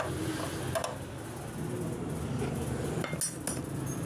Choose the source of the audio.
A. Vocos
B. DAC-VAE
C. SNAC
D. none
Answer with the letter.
D